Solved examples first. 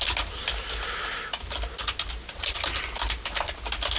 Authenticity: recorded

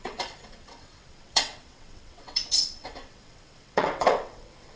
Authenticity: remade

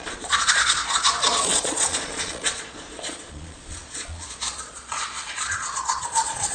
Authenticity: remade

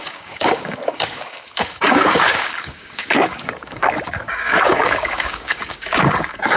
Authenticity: remade